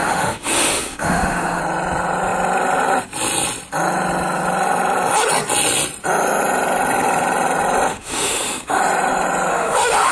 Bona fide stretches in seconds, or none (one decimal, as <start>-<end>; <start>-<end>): 1.6-7.9; 8.8-9.5